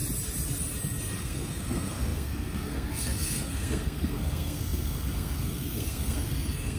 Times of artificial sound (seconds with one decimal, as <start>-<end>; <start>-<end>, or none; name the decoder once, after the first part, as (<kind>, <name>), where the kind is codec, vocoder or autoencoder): 1.2-6.8 (codec, SNAC)